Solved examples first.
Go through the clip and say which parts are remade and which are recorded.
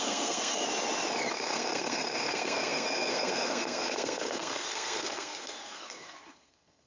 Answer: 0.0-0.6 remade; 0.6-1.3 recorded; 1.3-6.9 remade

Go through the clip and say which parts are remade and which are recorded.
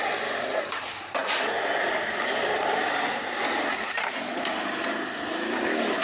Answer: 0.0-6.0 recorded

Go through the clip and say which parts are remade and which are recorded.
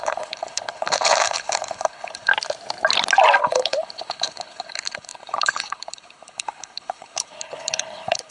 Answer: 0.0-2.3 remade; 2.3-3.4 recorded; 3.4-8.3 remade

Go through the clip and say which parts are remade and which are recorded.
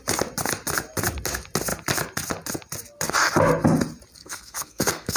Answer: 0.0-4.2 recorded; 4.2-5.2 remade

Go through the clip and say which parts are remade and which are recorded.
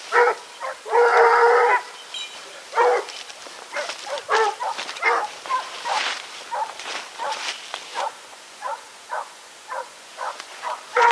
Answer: 0.0-7.9 recorded; 7.9-11.1 remade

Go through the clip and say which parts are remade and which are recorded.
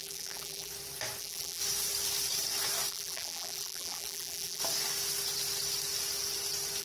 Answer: 0.0-0.7 remade; 0.7-1.2 recorded; 1.2-1.6 remade; 1.6-2.9 recorded; 2.9-4.6 remade; 4.6-6.8 recorded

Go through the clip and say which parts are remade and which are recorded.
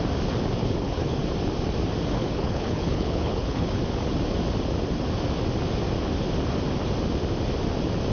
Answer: 0.0-0.6 recorded; 0.6-1.2 remade; 1.2-2.2 recorded; 2.2-3.8 remade; 3.8-8.1 recorded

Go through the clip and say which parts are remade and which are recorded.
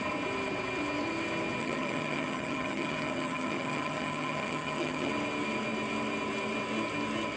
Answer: 0.0-1.6 recorded; 1.6-5.1 remade; 5.1-7.4 recorded